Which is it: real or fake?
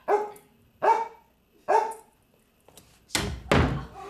real